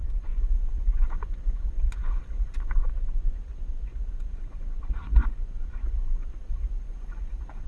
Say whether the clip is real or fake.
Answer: fake